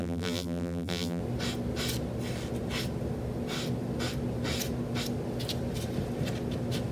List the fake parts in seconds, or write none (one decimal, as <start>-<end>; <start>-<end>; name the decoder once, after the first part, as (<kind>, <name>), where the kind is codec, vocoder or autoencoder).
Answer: 0.0-1.2 (vocoder, BigVGAN v2)